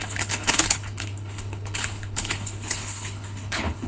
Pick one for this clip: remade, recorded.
remade